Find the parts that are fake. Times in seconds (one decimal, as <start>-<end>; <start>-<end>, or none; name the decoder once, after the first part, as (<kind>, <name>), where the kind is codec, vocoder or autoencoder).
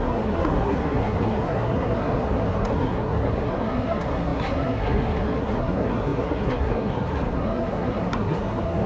0.0-8.9 (codec, SNAC)